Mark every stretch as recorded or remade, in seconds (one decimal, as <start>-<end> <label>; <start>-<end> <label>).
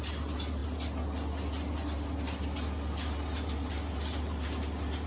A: 0.0-5.1 recorded